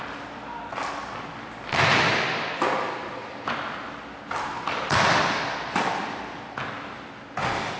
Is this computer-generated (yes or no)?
no